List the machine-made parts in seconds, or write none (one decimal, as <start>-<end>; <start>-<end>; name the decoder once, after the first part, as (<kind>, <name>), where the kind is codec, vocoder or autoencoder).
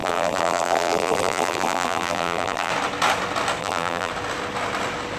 0.0-2.7 (vocoder, BigVGAN v2); 3.6-4.1